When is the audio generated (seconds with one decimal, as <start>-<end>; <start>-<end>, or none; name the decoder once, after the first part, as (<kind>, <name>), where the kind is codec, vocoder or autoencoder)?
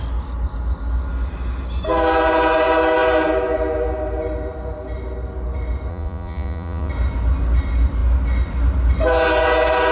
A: 5.9-6.9 (vocoder, Vocos)